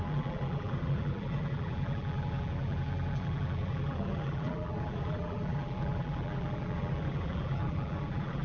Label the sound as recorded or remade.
remade